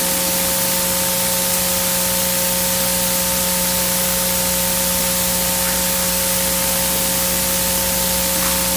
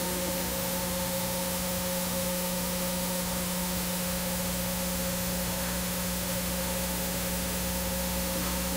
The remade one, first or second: second